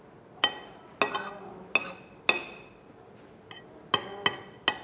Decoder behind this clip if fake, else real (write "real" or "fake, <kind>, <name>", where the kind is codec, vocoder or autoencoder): real